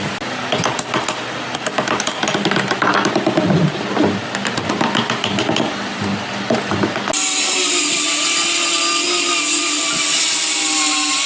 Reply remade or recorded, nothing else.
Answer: recorded